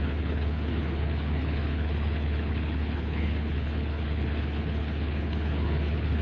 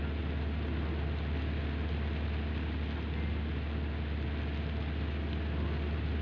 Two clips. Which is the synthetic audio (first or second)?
first